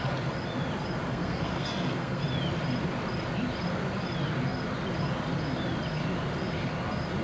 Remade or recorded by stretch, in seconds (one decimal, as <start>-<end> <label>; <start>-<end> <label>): 0.0-1.1 recorded; 1.1-2.2 remade; 2.2-7.2 recorded